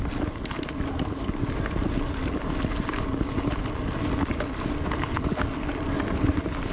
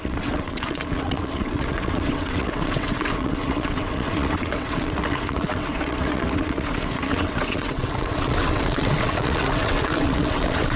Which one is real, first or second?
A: first